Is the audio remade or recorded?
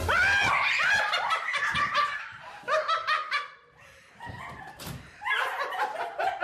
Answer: remade